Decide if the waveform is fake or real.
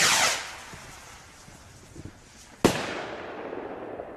real